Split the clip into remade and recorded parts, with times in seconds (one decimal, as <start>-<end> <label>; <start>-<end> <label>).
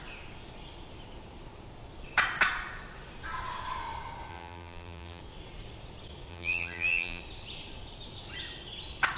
0.0-4.3 recorded; 4.3-5.2 remade; 5.2-6.3 recorded; 6.3-7.2 remade; 7.2-9.2 recorded